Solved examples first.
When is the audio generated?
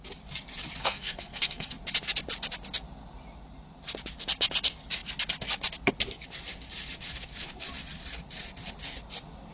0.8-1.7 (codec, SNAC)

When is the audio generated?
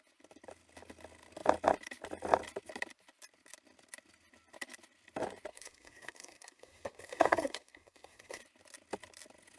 5.5-8.4 (codec, SNAC)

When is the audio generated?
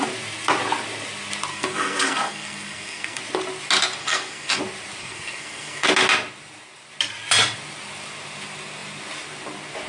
1.5-3.2 (codec, SNAC); 4.0-4.6; 5.0-5.9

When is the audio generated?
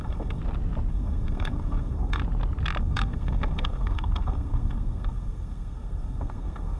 0.0-0.4 (codec, SNAC); 0.9-2.2; 2.8-6.8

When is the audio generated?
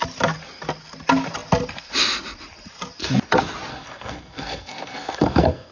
3.7-5.7 (codec, SNAC)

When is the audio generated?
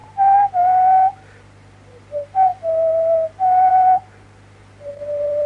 none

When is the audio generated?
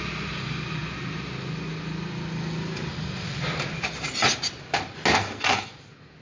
5.2-5.7 (codec, SNAC)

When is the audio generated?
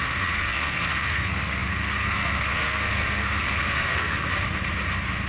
0.0-4.3 (codec, SNAC)